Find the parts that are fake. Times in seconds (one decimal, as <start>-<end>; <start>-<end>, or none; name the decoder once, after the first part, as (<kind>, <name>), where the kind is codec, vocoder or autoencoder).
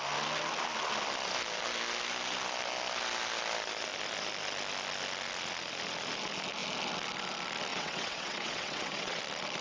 7.7-9.2 (vocoder, WaveNeXt)